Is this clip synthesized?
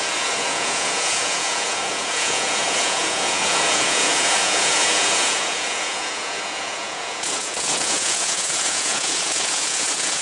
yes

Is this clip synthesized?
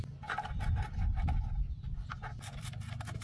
no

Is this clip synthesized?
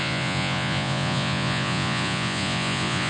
yes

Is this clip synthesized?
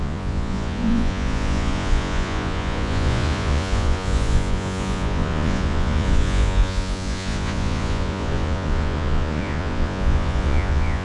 yes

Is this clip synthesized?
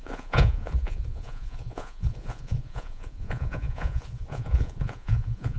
yes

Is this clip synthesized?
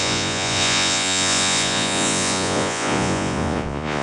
yes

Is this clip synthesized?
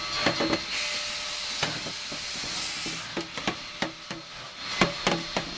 no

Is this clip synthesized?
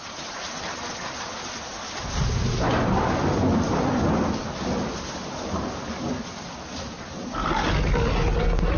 no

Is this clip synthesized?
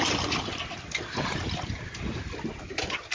no